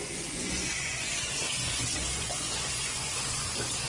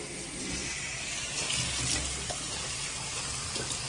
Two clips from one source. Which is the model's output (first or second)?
first